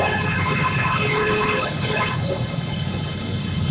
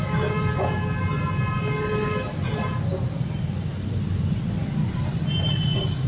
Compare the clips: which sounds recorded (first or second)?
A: second